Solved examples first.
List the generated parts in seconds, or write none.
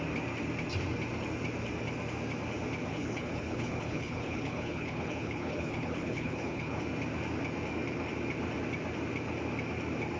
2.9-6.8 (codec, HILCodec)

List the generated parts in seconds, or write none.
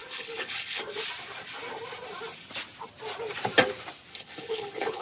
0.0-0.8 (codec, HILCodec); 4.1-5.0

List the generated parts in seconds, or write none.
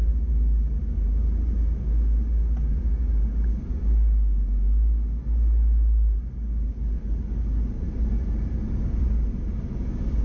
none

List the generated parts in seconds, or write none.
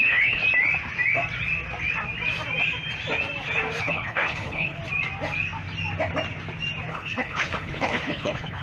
0.0-0.4 (codec, HILCodec); 3.8-4.8; 6.9-8.6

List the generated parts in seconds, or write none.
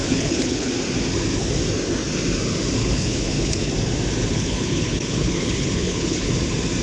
0.0-0.7 (codec, HILCodec); 2.8-3.7; 4.3-6.3